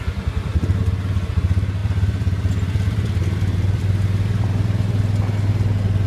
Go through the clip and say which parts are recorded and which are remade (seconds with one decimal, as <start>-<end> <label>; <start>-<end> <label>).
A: 0.0-1.8 recorded; 1.8-5.5 remade; 5.5-6.1 recorded